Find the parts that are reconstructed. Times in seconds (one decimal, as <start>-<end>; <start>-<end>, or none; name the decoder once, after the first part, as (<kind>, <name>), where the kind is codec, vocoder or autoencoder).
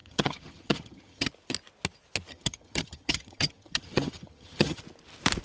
0.0-1.3 (vocoder, HiFi-GAN); 2.3-4.8